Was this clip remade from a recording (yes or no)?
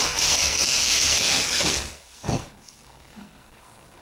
yes